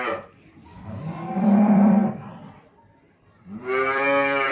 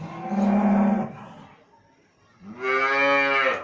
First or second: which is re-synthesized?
first